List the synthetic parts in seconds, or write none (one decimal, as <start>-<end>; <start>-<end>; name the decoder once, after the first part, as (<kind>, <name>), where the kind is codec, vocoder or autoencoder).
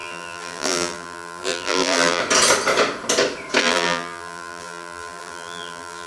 0.0-2.2 (vocoder, BigVGAN v2); 3.6-6.1